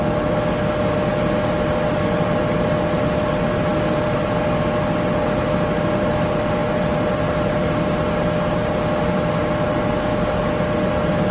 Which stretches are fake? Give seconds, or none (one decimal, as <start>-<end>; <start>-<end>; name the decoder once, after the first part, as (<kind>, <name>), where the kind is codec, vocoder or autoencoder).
none